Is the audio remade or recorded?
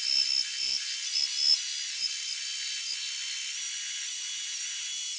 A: recorded